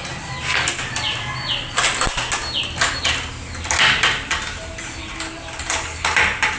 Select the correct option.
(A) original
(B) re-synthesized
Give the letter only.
A